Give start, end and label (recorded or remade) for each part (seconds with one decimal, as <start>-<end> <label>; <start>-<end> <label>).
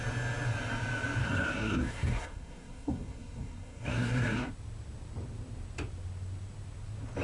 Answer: 0.0-1.2 recorded; 1.2-4.5 remade; 4.5-7.2 recorded